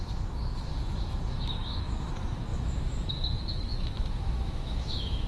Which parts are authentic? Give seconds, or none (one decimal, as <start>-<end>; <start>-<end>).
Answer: none